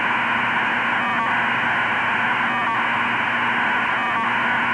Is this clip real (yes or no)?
yes